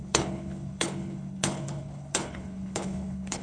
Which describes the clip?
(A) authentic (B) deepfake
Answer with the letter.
B